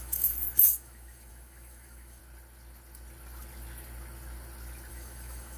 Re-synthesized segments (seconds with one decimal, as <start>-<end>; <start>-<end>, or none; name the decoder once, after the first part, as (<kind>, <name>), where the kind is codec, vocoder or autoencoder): 0.0-2.2 (autoencoder, DAC-VAE); 4.9-5.6